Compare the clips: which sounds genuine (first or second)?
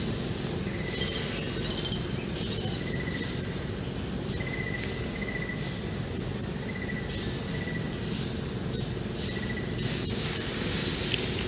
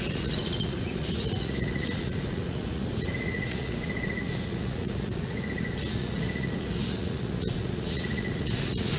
first